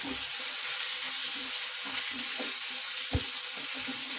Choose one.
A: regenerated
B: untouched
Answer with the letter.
B